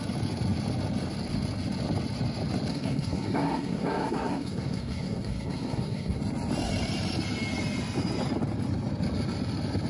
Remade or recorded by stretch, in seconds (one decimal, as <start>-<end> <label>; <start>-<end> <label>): 0.0-2.7 recorded; 2.7-6.2 remade; 6.2-9.9 recorded